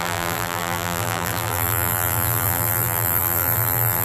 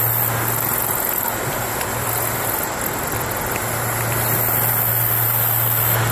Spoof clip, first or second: first